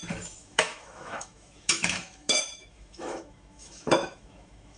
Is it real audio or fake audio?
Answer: fake